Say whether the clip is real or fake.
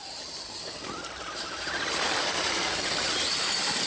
real